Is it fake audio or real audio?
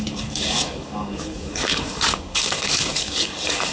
fake